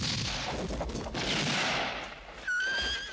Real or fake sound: real